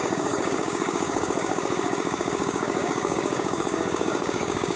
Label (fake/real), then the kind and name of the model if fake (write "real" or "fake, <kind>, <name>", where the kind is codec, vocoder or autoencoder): fake, codec, DAC